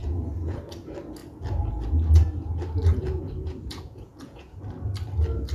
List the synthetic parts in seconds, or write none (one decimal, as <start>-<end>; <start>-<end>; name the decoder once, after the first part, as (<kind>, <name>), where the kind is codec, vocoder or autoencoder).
0.0-0.6 (vocoder, Vocos); 2.9-4.6